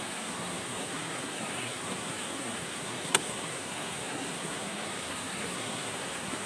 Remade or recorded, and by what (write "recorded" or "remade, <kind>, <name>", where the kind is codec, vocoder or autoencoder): remade, codec, SNAC